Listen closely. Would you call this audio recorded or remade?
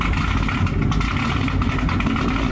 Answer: recorded